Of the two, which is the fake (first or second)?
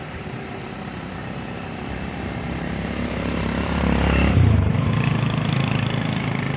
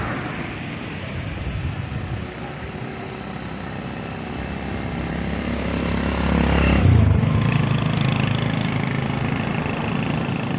first